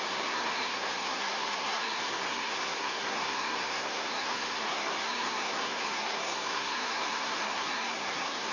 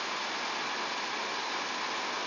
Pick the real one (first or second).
second